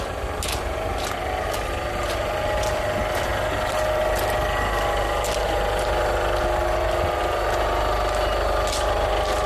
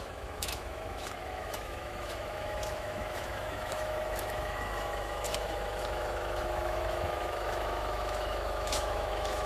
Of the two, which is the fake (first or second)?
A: second